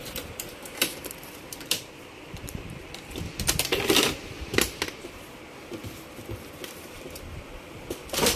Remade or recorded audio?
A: remade